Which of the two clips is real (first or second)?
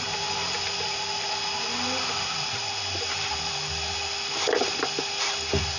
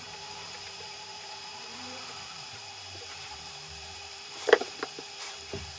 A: first